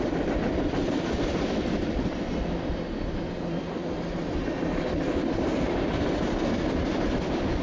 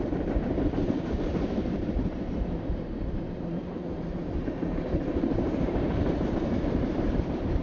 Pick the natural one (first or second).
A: first